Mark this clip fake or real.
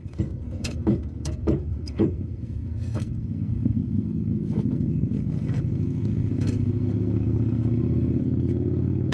fake